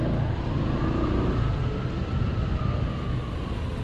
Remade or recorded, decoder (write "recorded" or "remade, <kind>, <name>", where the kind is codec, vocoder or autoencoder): recorded